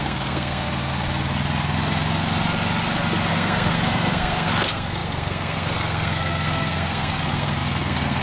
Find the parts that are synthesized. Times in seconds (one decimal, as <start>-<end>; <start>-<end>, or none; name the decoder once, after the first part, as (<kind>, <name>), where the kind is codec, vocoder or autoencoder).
0.0-0.7 (codec, SNAC); 3.3-8.2